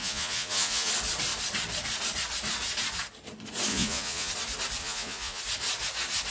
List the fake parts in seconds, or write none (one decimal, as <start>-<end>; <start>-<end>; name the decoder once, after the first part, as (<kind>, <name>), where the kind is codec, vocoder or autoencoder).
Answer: 0.0-0.9 (vocoder, Vocos); 3.7-4.3; 4.8-5.4